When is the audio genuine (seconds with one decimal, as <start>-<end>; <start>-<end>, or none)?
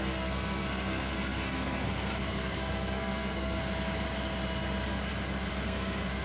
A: 3.6-5.5